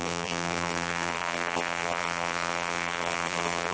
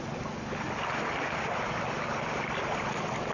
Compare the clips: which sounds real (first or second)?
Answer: second